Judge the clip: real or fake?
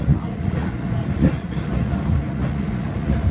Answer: fake